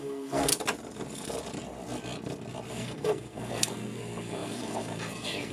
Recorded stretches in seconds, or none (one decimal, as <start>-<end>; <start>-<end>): 0.5-2.7